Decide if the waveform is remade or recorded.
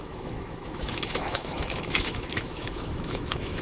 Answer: remade